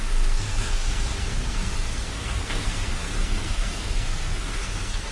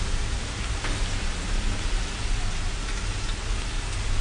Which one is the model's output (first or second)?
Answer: first